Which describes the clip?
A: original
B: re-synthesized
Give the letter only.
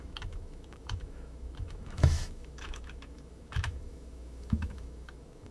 B